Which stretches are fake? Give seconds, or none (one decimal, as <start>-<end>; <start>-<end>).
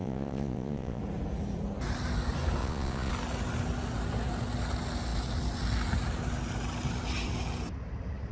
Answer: 0.0-1.0; 2.6-3.1